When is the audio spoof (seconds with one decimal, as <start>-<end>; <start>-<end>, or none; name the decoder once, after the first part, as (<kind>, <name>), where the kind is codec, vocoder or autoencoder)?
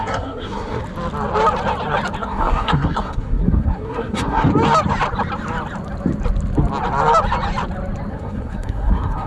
0.0-0.8 (codec, SNAC); 2.2-4.5; 8.1-9.3